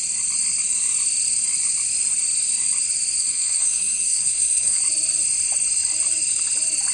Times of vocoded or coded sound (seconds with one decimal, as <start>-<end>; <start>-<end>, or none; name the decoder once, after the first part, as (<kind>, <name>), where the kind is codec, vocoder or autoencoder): 3.2-4.8 (codec, SNAC)